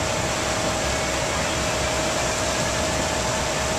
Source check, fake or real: real